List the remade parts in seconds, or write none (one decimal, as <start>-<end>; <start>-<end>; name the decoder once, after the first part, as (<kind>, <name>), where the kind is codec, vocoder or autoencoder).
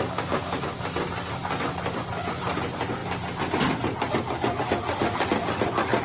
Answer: none